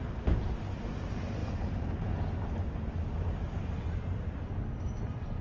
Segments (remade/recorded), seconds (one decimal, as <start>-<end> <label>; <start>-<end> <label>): 0.0-5.4 recorded

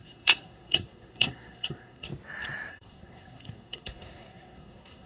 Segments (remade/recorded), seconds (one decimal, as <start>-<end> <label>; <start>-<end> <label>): 0.0-2.1 remade; 2.1-2.7 recorded; 2.7-5.1 remade

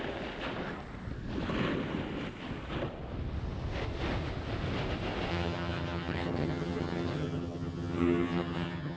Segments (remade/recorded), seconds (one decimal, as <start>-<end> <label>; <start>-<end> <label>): 0.0-5.3 recorded; 5.3-9.0 remade